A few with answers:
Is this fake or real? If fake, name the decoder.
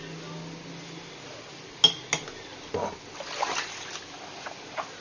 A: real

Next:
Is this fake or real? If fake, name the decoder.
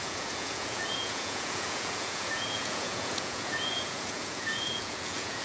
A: fake, vocoder, Vocos